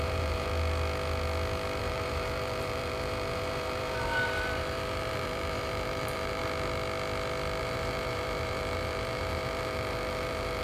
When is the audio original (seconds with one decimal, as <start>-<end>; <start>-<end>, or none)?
0.5-1.8; 6.4-7.6